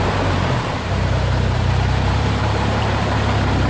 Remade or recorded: remade